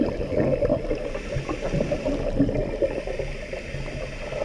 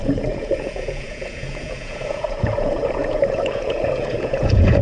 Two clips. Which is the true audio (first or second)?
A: first